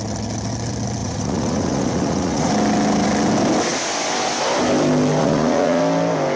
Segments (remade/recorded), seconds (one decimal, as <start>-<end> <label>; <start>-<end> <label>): 0.0-1.0 recorded; 1.0-2.5 remade; 2.5-5.2 recorded; 5.2-5.8 remade; 5.8-6.4 recorded